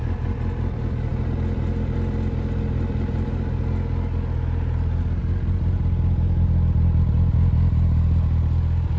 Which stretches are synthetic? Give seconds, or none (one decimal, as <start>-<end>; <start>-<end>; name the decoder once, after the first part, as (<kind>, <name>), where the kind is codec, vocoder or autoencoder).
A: none